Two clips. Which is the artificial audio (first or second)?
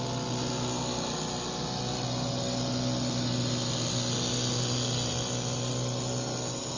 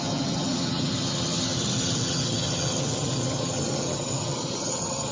second